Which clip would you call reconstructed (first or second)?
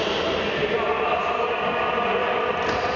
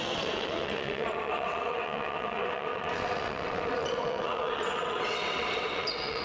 second